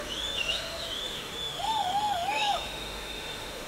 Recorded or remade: remade